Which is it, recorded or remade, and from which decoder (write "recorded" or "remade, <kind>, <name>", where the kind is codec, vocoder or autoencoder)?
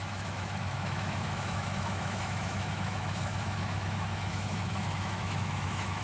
remade, autoencoder, DAC-VAE